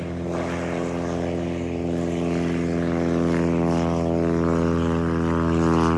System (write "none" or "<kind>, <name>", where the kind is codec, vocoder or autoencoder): none